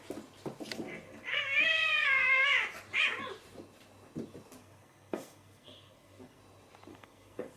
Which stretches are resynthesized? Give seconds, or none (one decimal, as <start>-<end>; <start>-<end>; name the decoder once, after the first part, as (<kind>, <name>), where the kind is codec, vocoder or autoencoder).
1.3-2.5 (codec, SNAC); 4.6-6.4; 6.9-7.6